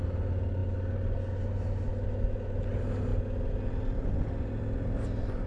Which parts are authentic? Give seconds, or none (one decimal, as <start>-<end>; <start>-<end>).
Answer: 0.0-5.5